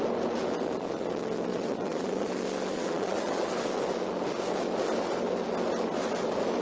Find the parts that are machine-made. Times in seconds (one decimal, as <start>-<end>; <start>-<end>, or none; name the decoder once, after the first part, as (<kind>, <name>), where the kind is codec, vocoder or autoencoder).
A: 1.5-2.3 (vocoder, Vocos); 2.7-3.5